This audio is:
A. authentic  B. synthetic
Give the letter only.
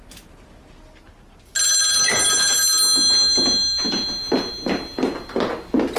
A